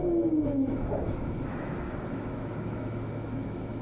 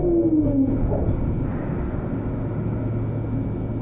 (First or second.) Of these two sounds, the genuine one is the second